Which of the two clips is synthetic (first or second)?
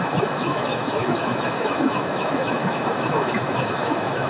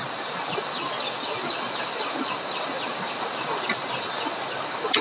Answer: first